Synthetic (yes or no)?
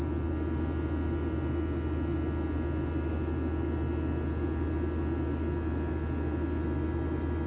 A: no